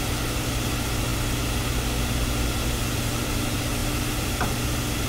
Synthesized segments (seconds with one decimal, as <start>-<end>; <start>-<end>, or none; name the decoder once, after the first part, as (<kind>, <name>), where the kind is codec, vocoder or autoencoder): none